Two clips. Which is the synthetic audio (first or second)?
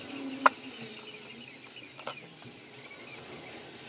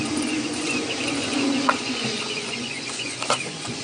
second